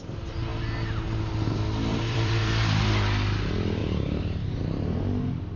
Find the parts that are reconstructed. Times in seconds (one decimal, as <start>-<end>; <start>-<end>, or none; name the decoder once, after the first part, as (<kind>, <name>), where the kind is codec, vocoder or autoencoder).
1.9-2.9 (vocoder, BigVGAN v2); 3.8-5.0

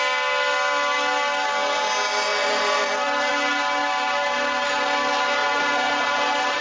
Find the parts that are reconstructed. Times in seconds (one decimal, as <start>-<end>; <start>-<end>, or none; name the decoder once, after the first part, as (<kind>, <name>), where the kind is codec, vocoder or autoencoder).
2.3-3.3 (vocoder, BigVGAN v2); 5.4-6.6

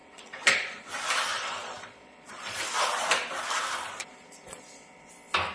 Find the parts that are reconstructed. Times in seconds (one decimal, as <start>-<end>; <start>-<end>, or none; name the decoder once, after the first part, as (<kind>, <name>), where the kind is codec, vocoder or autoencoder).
0.0-0.9 (vocoder, Vocos); 1.3-2.6; 3.9-5.1

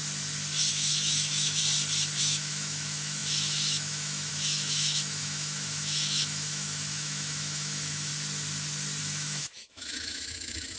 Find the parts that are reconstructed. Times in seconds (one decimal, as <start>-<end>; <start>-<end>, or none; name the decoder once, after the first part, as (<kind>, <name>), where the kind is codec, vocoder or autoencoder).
0.7-1.6 (autoencoder, DAC-VAE); 2.2-8.1; 9.0-10.8

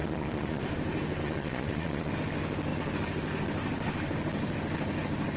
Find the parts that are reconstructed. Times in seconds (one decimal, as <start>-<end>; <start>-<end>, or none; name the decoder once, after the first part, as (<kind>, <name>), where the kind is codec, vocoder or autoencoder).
0.0-0.6 (vocoder, Vocos); 1.2-2.1

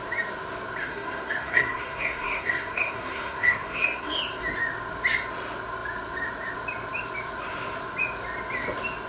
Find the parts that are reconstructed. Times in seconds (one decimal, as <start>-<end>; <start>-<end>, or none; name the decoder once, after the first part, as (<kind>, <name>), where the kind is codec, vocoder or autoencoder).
0.8-4.2 (codec, SNAC)

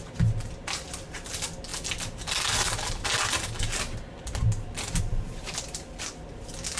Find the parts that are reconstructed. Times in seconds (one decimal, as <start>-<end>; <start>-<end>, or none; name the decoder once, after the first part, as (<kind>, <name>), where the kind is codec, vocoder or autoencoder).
none

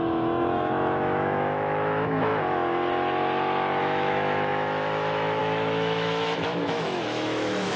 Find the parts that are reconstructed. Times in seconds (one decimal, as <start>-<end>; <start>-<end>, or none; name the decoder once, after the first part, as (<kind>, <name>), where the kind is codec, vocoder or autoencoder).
0.0-2.3 (autoencoder, DAC-VAE); 3.8-7.8